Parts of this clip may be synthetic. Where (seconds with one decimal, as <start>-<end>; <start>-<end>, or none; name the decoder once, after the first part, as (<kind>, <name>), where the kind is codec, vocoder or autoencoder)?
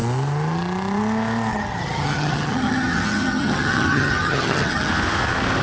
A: 1.5-4.9 (vocoder, HiFi-GAN)